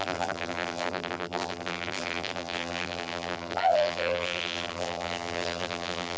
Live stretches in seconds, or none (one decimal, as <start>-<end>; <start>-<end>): none